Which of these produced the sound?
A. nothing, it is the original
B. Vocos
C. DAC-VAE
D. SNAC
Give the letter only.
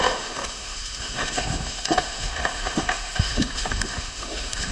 C